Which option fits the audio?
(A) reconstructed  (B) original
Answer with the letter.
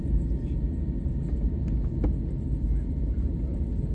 B